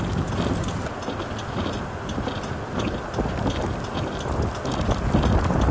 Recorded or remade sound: recorded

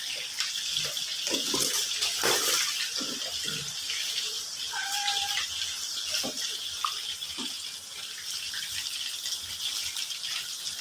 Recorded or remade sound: recorded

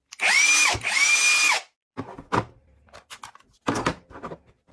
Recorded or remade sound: recorded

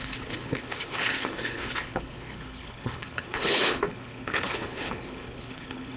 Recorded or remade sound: remade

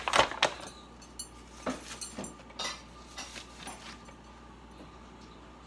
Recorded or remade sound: recorded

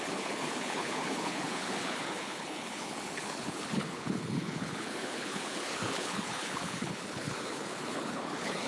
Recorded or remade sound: remade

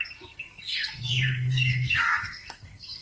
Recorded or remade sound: remade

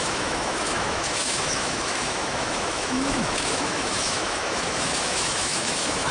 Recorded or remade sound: remade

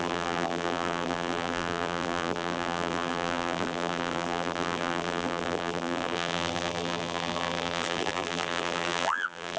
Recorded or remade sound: remade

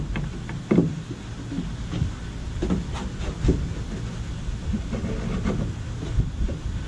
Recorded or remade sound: recorded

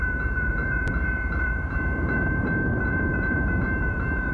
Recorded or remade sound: remade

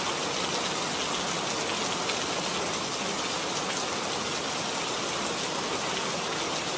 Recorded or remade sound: recorded